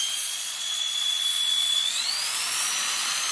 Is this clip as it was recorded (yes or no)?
no